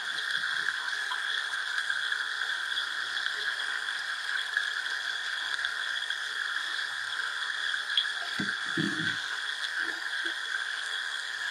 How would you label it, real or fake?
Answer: fake